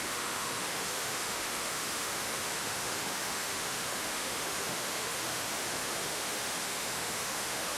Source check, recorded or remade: remade